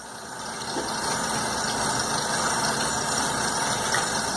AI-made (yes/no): no